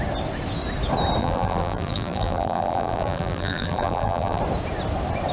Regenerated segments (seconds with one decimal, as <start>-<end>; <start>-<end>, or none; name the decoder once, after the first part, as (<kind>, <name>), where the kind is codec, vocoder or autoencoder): 1.2-4.4 (vocoder, BigVGAN v2)